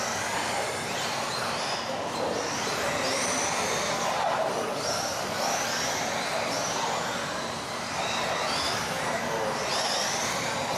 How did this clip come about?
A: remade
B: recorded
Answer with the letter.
B